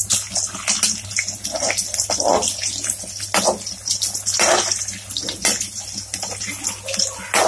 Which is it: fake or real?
real